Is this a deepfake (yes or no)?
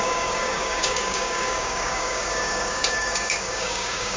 yes